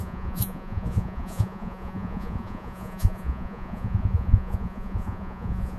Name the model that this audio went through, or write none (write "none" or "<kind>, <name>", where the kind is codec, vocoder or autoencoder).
vocoder, Vocos